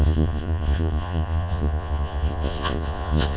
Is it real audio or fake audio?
fake